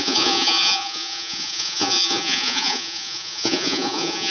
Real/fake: fake